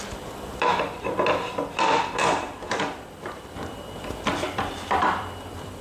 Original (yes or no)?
no